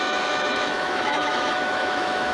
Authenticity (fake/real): fake